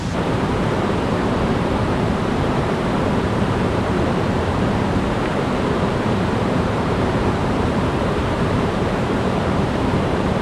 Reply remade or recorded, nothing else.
remade